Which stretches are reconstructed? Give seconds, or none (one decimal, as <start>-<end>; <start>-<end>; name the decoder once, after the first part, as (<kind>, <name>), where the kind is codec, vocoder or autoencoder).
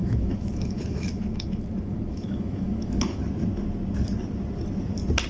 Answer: 0.0-3.2 (autoencoder, DAC-VAE)